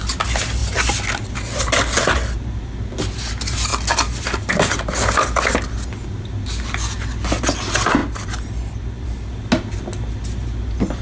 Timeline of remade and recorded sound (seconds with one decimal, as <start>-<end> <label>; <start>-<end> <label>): 0.0-8.0 recorded; 8.0-9.3 remade; 9.3-11.0 recorded